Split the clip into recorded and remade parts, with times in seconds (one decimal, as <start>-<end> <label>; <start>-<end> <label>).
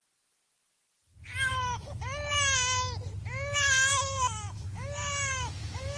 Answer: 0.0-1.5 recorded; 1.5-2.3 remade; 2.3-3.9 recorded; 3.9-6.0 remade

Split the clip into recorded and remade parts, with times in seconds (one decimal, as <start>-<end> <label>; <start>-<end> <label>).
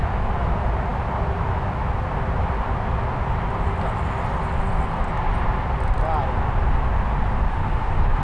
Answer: 0.0-7.5 recorded; 7.5-8.2 remade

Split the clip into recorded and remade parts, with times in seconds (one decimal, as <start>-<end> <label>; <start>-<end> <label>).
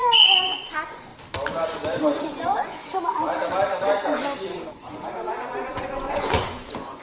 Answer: 0.0-1.1 remade; 1.1-2.0 recorded; 2.0-2.8 remade; 2.8-4.5 recorded; 4.5-7.0 remade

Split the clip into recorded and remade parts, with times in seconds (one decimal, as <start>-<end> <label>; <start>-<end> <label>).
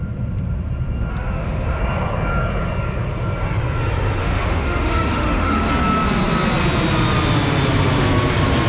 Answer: 0.0-1.1 recorded; 1.1-1.8 remade; 1.8-4.2 recorded; 4.2-5.7 remade; 5.7-8.7 recorded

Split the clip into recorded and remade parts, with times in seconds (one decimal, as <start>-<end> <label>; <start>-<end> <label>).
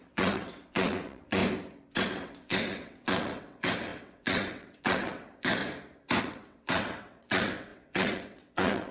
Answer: 0.0-1.4 remade; 1.4-2.1 recorded; 2.1-5.6 remade; 5.6-6.2 recorded; 6.2-8.9 remade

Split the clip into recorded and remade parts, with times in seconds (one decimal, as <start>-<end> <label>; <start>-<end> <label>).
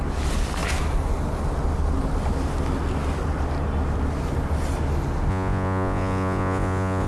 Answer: 0.0-5.3 recorded; 5.3-7.1 remade